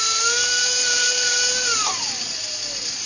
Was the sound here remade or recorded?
recorded